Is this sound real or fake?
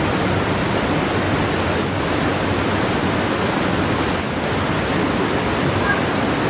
real